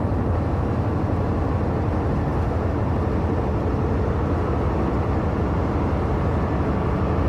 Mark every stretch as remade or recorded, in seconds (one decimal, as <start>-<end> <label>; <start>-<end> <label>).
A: 0.0-7.3 recorded